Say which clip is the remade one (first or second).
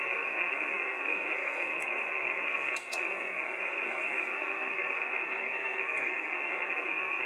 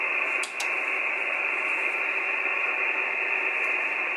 first